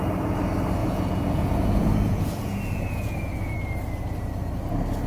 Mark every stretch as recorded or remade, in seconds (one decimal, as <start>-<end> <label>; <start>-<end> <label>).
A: 0.0-0.8 recorded; 0.8-3.5 remade; 3.5-5.1 recorded